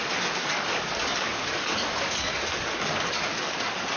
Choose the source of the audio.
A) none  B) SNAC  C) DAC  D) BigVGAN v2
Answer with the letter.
C